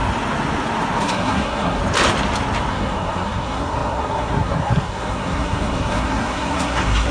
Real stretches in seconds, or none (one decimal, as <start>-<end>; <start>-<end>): 0.0-1.0; 1.8-2.7